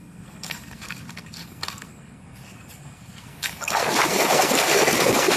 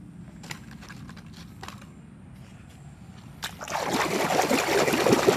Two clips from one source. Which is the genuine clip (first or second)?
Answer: second